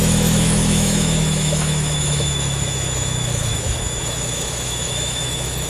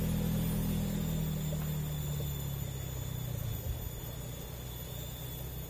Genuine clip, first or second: second